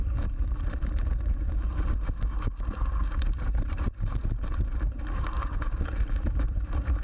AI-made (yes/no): yes